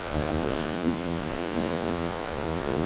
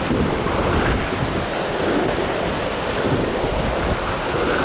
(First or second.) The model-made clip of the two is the first